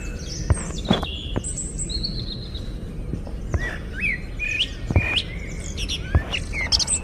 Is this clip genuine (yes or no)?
yes